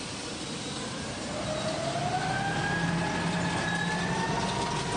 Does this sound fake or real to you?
real